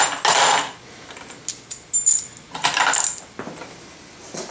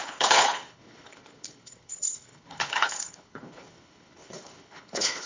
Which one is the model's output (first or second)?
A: second